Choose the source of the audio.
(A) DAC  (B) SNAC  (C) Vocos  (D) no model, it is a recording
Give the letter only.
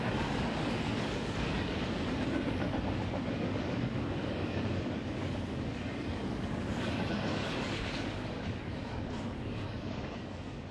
A